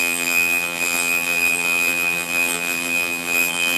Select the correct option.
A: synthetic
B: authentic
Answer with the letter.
A